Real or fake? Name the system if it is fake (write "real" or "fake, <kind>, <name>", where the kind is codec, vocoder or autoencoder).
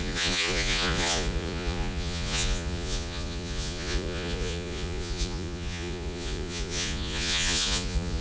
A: fake, vocoder, Vocos